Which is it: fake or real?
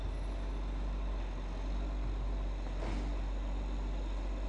real